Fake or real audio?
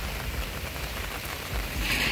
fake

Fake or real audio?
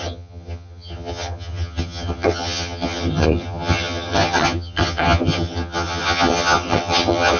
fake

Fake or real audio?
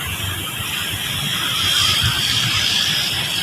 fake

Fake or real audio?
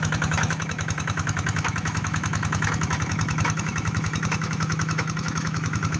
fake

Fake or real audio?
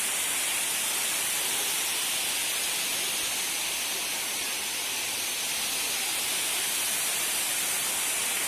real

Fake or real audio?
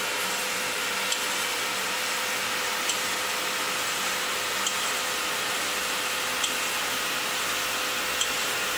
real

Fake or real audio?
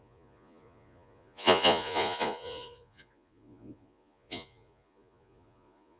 fake